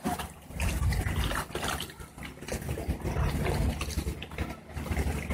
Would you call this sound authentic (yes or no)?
yes